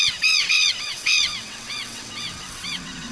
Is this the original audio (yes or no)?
no